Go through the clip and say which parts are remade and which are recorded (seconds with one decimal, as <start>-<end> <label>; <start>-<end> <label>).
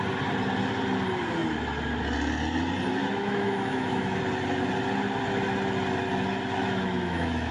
0.0-3.0 recorded; 3.0-4.2 remade; 4.2-6.6 recorded; 6.6-7.5 remade